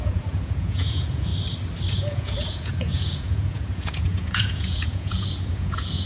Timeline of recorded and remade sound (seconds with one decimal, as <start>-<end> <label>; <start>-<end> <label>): 0.0-1.3 remade; 1.3-1.9 recorded; 1.9-6.1 remade

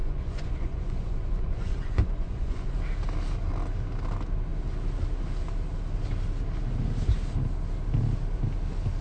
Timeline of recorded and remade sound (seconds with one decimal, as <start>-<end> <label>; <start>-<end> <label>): 0.0-2.8 remade; 2.8-9.0 recorded